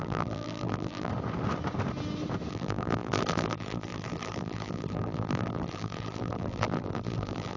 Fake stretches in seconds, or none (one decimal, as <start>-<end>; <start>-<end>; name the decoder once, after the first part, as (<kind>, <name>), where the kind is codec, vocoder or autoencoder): 0.0-1.1 (vocoder, BigVGAN v2); 2.5-7.6